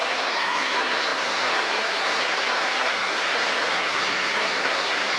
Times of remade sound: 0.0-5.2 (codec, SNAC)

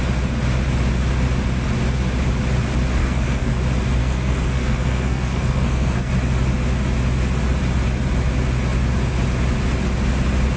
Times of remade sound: 3.0-3.5 (codec, SNAC); 4.0-6.1

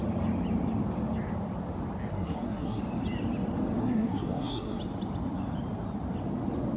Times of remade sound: 2.1-2.8 (codec, SNAC); 3.8-4.8